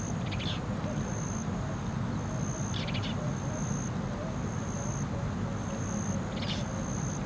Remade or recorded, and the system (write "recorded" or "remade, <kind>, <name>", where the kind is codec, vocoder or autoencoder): recorded